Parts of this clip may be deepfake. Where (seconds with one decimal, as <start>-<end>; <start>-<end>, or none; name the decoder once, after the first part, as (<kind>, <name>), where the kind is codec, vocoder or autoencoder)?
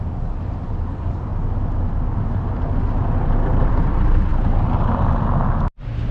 none